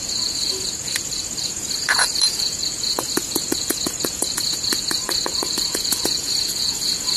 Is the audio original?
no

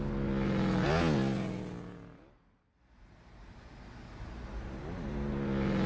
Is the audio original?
yes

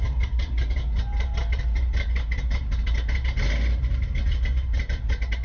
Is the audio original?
yes